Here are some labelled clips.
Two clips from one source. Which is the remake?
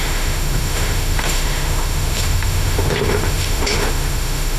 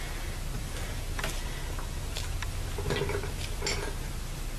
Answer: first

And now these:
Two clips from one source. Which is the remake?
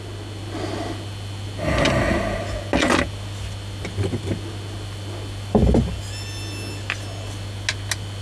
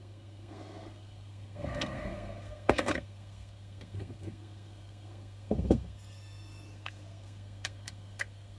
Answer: second